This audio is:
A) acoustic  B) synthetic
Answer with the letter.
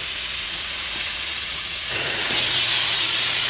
B